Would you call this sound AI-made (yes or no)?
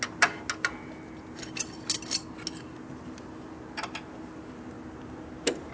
no